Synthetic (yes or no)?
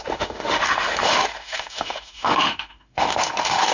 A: yes